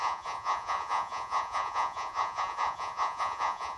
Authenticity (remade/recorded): remade